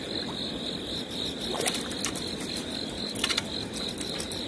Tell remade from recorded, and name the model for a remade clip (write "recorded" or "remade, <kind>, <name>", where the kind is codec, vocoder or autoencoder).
recorded